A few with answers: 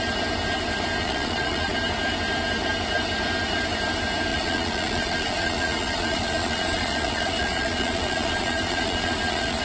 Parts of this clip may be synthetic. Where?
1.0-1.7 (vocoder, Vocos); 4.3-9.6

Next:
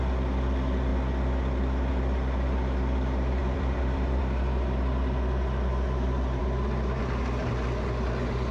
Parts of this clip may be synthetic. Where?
3.4-4.2 (vocoder, BigVGAN v2)

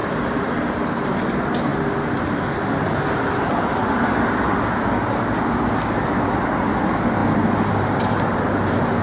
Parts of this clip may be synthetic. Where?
none

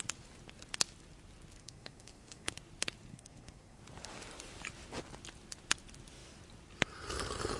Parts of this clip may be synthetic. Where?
1.6-2.5 (codec, SNAC); 3.1-3.8